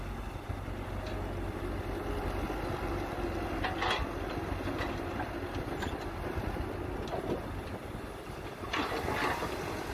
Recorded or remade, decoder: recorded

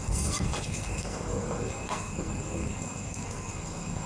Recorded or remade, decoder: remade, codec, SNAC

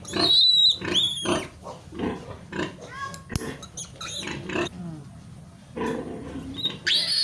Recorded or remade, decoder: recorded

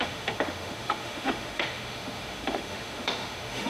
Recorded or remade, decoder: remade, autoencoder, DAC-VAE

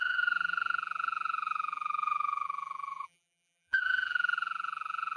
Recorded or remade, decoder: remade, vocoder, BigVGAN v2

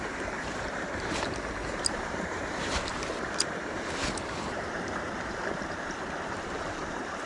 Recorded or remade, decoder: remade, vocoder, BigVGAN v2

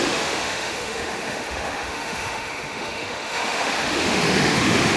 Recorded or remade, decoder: remade, autoencoder, DAC-VAE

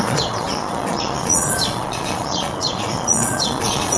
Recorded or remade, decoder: remade, vocoder, Vocos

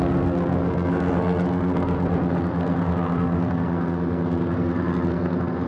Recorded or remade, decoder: remade, codec, SNAC